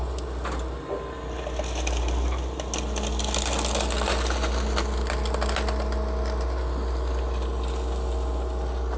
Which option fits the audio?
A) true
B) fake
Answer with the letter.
A